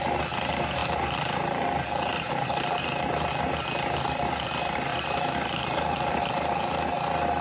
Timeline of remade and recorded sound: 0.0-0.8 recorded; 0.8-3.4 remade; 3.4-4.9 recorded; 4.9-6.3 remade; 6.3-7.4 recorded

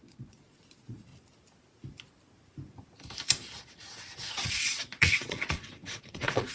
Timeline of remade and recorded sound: 0.0-1.1 remade; 1.1-4.3 recorded; 4.3-6.5 remade